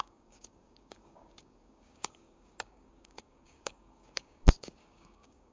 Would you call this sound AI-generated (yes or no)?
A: yes